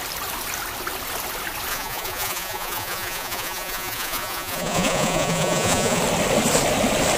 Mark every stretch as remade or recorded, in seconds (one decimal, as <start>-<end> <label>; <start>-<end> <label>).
0.0-1.7 recorded; 1.7-6.0 remade; 6.0-7.2 recorded